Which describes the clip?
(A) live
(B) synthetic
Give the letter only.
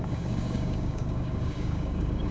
B